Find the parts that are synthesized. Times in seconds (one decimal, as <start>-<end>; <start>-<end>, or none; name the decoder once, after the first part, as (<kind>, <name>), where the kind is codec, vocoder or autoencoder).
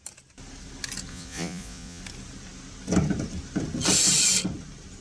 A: 1.1-2.0 (vocoder, Vocos)